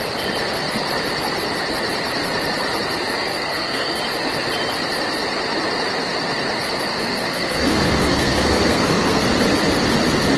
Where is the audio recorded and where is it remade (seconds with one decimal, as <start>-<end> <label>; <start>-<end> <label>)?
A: 0.0-3.3 recorded; 3.3-4.0 remade; 4.0-6.9 recorded; 6.9-9.2 remade; 9.2-10.4 recorded